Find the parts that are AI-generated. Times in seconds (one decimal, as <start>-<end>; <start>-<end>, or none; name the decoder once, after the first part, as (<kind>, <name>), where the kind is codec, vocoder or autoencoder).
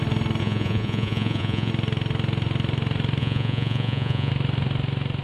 0.4-1.7 (vocoder, Vocos); 3.2-4.3